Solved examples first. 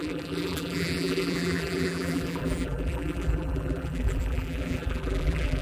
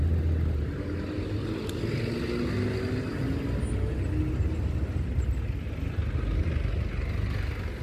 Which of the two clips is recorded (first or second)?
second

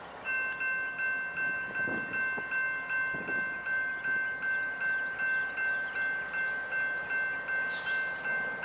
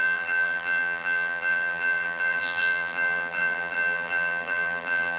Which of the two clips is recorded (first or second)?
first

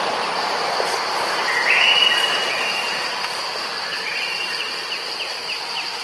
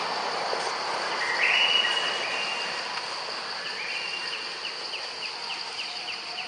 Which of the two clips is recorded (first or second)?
second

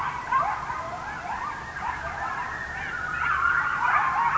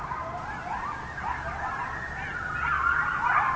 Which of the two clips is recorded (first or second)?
second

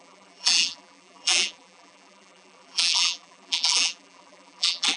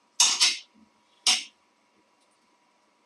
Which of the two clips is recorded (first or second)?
second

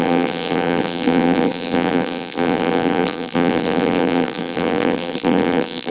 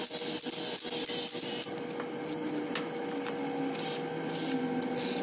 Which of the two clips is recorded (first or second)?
second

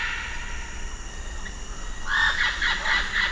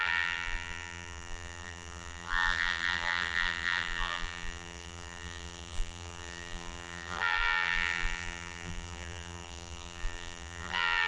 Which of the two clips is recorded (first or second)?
first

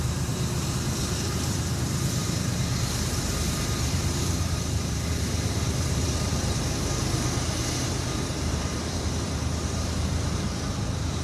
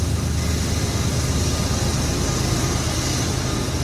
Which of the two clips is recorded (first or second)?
second